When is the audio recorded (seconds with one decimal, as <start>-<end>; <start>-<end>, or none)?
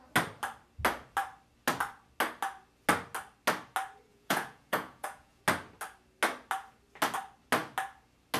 0.0-4.1; 5.4-8.4